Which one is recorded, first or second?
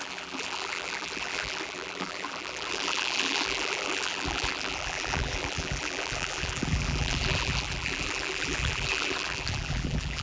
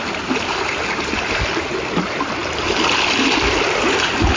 second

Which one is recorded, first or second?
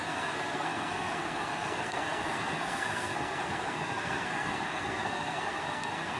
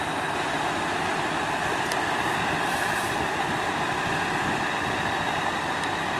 second